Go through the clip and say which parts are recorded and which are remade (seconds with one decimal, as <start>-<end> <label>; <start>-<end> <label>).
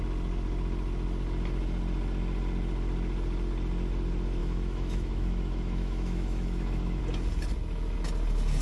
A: 0.0-4.4 recorded; 4.4-7.0 remade; 7.0-8.6 recorded